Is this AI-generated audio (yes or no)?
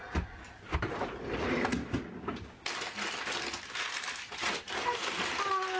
no